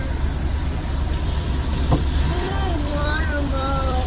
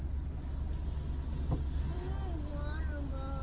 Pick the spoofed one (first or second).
first